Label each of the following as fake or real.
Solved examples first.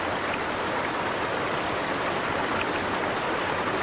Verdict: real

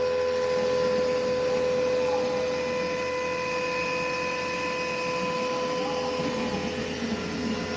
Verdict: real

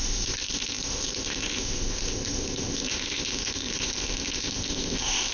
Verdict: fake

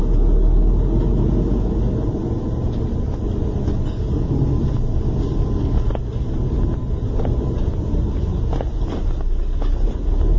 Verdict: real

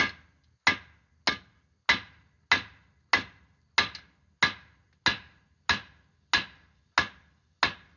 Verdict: real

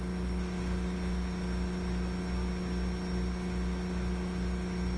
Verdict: real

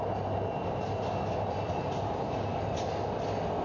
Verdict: real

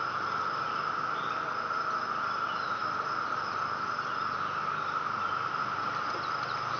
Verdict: real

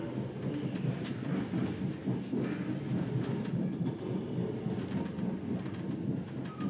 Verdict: real